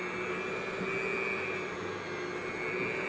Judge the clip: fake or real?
real